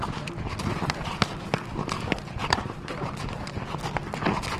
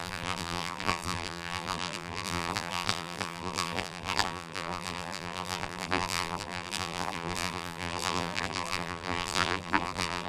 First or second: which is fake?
second